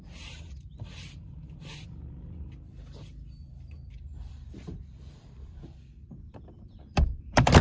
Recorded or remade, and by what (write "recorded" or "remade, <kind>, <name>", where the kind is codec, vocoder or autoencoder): remade, vocoder, BigVGAN v2